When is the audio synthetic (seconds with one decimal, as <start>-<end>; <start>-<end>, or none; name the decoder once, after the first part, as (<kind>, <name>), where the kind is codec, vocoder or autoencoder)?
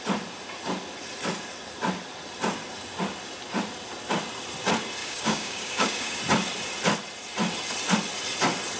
5.0-6.2 (codec, DAC)